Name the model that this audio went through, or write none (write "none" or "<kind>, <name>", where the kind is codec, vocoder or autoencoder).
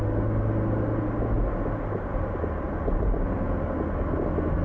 none